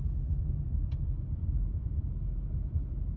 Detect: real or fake real